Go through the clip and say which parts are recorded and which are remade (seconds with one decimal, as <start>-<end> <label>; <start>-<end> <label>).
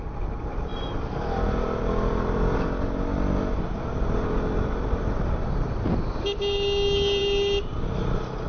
0.0-8.5 recorded